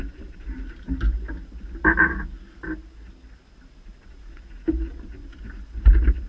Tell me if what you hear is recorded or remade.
recorded